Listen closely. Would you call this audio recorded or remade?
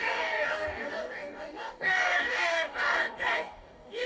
remade